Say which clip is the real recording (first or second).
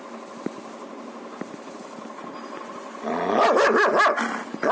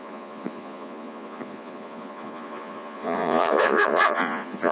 first